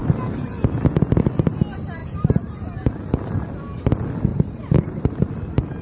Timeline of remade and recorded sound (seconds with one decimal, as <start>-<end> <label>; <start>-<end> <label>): 0.0-0.6 remade; 0.6-2.0 recorded; 2.0-2.9 remade; 2.9-4.3 recorded; 4.3-5.3 remade; 5.3-5.8 recorded